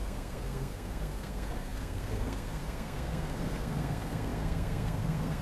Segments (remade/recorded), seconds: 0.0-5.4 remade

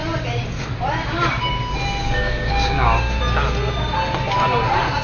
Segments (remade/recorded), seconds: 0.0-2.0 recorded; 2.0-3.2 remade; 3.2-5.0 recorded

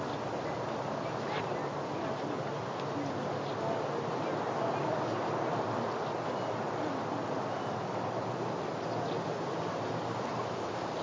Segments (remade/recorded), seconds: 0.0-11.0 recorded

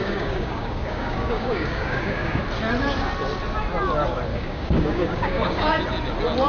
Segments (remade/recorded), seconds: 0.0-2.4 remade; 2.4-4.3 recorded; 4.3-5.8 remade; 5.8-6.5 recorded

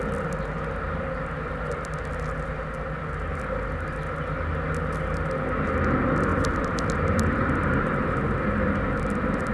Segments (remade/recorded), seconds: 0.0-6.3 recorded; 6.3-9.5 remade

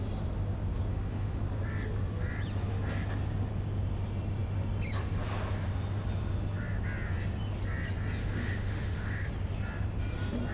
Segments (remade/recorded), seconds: 0.0-0.9 recorded; 0.9-1.4 remade; 1.4-8.2 recorded; 8.2-9.3 remade; 9.3-10.5 recorded

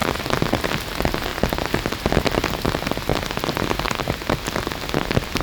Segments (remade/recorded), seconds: 0.0-3.1 recorded; 3.1-4.1 remade; 4.1-5.4 recorded